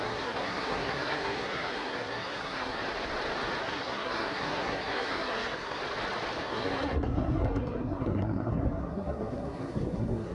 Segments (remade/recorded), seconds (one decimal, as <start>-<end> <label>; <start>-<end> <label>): 0.0-2.8 remade; 2.8-3.6 recorded; 3.6-5.8 remade; 5.8-6.4 recorded; 6.4-10.3 remade